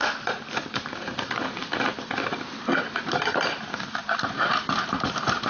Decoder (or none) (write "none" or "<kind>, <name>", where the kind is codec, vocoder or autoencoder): vocoder, BigVGAN v2